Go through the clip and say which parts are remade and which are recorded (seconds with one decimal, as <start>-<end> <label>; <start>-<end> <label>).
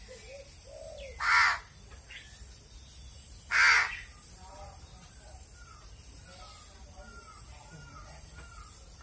0.0-9.0 recorded